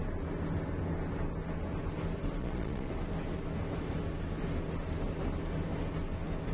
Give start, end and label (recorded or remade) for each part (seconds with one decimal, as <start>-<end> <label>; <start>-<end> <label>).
0.0-2.4 recorded; 2.4-2.9 remade; 2.9-6.5 recorded